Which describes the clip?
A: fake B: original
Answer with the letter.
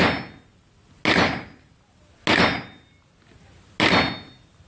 B